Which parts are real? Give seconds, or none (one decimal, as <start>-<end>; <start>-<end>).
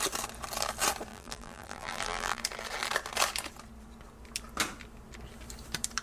0.0-1.1; 2.4-6.0